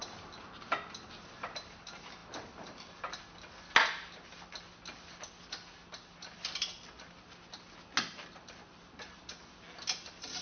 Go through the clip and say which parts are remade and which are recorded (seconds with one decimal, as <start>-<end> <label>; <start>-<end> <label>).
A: 0.0-10.4 recorded